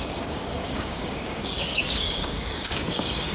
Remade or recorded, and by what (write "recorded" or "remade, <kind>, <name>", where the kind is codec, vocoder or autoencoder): remade, codec, DAC